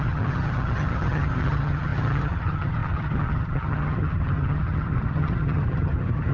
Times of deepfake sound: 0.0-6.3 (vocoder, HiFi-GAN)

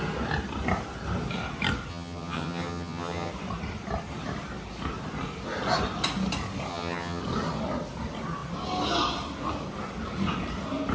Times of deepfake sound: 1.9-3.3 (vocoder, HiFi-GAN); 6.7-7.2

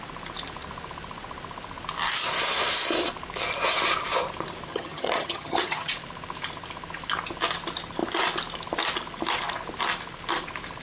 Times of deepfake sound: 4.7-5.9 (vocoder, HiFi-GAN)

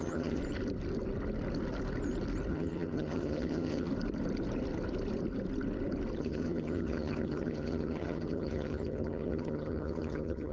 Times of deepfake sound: 0.0-0.4 (vocoder, HiFi-GAN); 2.5-3.9; 6.2-10.5

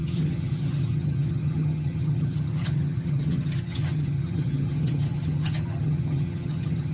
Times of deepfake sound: 0.0-6.9 (vocoder, HiFi-GAN)

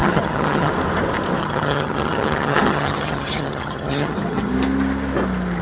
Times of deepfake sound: 0.0-0.7 (vocoder, HiFi-GAN); 1.4-4.5

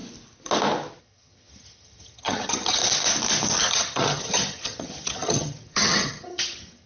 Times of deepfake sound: 1.0-2.8 (vocoder, HiFi-GAN); 3.7-6.9